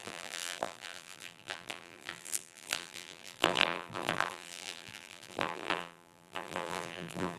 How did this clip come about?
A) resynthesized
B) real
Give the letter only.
A